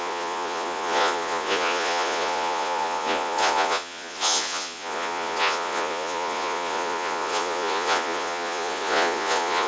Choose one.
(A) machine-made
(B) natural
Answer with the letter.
A